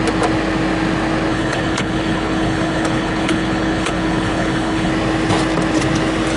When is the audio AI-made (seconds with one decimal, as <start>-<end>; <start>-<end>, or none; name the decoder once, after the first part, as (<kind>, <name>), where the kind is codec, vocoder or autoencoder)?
1.3-4.9 (codec, HILCodec)